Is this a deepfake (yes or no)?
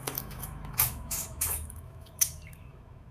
yes